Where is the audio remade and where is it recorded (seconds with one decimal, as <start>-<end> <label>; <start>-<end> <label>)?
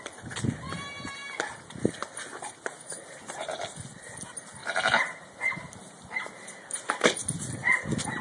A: 0.0-2.9 recorded; 2.9-3.6 remade; 3.6-4.6 recorded; 4.6-6.9 remade; 6.9-8.2 recorded